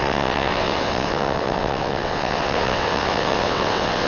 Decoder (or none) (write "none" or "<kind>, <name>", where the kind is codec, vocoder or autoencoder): vocoder, WaveNeXt